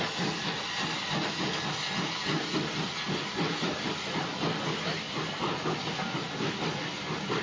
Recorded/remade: recorded